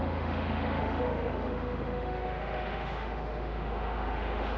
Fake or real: fake